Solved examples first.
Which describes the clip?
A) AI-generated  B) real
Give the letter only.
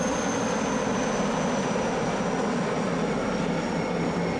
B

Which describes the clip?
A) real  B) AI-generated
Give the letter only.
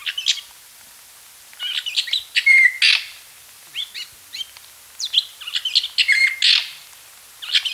A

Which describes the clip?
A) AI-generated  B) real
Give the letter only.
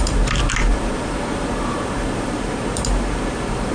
A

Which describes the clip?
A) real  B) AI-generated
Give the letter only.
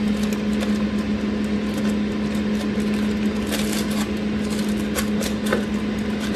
A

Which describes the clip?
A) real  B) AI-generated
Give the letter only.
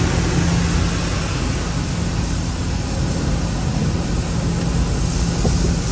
A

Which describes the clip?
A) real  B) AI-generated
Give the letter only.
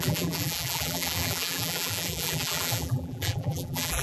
B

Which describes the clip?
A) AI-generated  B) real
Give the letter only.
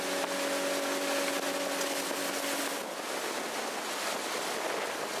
B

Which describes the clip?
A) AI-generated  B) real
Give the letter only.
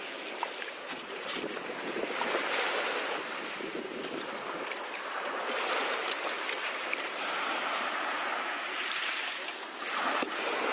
A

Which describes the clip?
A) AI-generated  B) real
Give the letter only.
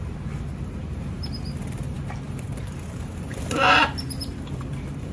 A